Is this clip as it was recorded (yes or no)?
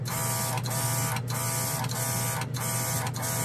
yes